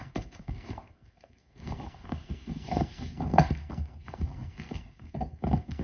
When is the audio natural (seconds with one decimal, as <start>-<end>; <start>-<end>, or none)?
none